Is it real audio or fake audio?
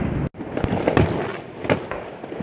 real